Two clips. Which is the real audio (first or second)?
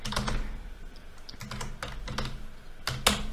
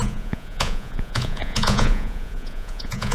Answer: first